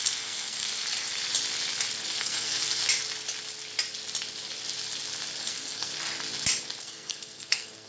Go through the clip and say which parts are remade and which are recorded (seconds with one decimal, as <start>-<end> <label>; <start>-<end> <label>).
0.0-0.8 remade; 0.8-2.2 recorded; 2.2-2.8 remade; 2.8-5.4 recorded; 5.4-5.9 remade; 5.9-6.8 recorded; 6.8-7.9 remade